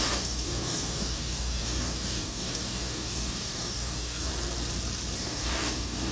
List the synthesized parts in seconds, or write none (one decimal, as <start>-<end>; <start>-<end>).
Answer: 0.0-4.3; 5.2-6.1